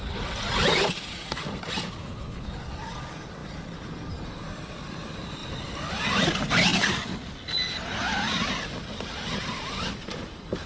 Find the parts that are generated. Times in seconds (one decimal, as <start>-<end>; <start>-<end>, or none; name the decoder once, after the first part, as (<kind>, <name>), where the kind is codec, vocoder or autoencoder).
2.0-2.5 (codec, HILCodec)